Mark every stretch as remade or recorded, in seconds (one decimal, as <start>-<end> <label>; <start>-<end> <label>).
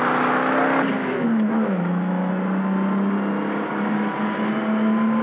0.0-1.0 recorded; 1.0-2.3 remade; 2.3-5.2 recorded